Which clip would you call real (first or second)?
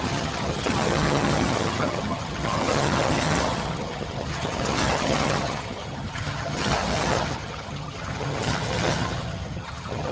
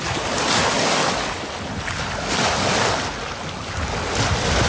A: second